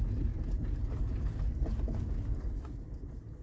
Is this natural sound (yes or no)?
yes